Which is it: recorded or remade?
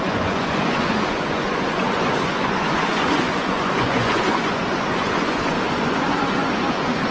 remade